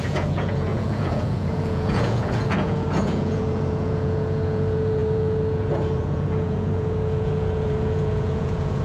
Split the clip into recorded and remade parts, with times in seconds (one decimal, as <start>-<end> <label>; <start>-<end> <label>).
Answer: 0.0-8.8 remade